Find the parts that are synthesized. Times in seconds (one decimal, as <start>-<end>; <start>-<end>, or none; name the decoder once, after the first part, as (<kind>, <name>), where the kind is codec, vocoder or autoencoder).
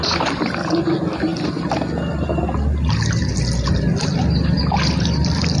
none